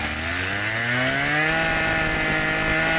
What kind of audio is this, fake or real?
real